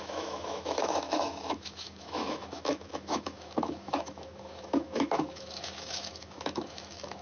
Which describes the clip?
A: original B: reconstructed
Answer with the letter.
B